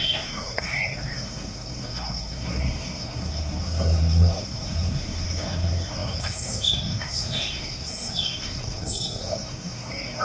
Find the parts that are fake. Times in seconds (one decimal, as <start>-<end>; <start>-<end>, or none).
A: 0.0-10.2